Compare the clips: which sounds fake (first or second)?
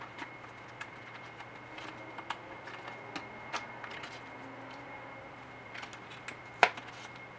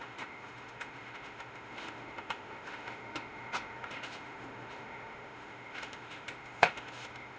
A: second